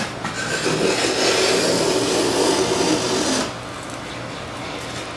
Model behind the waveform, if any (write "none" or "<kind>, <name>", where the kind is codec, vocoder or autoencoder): none